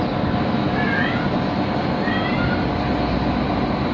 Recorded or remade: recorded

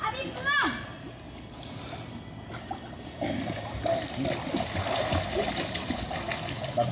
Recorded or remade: recorded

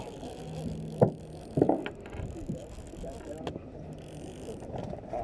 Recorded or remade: recorded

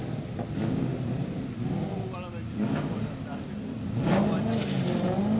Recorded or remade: recorded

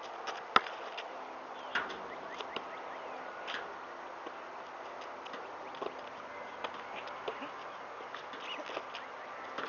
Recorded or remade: recorded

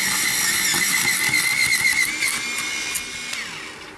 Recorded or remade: recorded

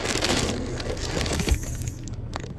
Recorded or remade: remade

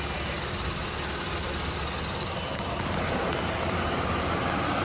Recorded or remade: recorded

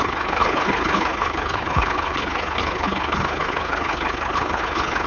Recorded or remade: remade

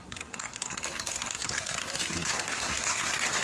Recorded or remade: remade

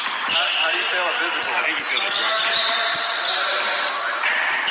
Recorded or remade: recorded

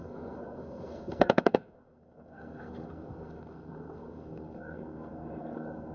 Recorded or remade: remade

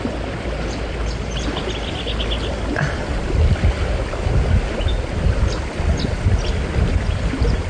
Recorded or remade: recorded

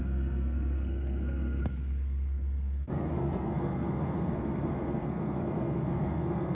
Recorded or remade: remade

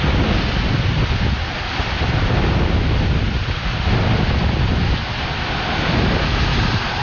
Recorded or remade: recorded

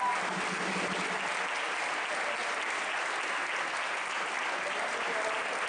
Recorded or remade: recorded